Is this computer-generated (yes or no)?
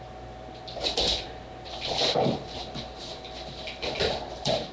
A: no